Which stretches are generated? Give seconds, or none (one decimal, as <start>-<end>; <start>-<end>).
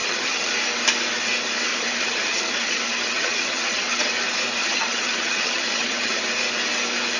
0.0-0.5; 1.7-4.1; 4.6-6.2